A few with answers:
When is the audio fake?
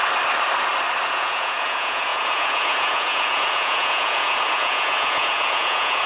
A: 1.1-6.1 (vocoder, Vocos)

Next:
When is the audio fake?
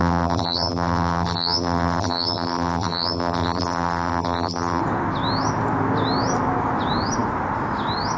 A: 0.0-4.8 (vocoder, BigVGAN v2)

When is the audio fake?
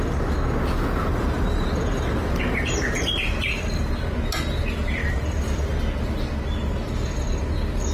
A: 1.1-3.9 (vocoder, BigVGAN v2); 5.0-5.7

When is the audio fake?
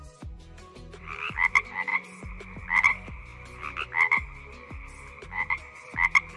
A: 0.0-3.3 (vocoder, BigVGAN v2); 5.2-6.4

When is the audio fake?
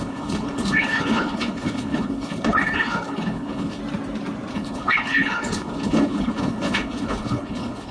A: 0.0-3.8 (codec, HILCodec); 4.5-7.9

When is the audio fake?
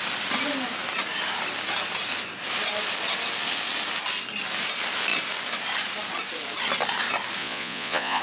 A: 7.4-8.2 (vocoder, Vocos)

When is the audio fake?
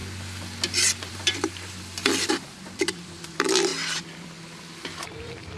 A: 1.1-3.7 (vocoder, BigVGAN v2); 5.0-5.6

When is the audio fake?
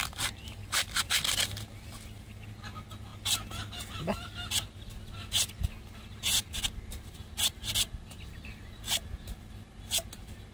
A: none